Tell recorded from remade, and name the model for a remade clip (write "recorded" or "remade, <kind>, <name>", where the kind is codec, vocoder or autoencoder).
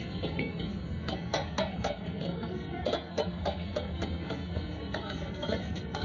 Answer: remade, codec, SNAC